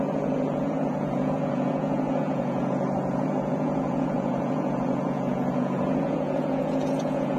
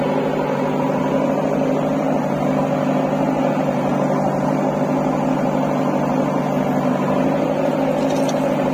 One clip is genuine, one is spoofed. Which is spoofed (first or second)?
first